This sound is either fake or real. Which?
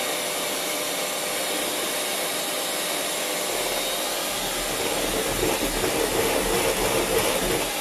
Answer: real